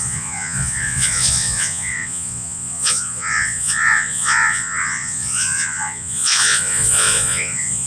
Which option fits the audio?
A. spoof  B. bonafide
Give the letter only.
A